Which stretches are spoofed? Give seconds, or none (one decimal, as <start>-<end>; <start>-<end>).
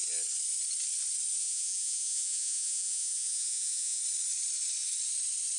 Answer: 1.4-4.0